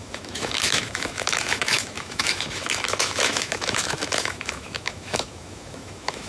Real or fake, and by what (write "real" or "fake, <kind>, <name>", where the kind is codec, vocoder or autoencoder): fake, autoencoder, DAC-VAE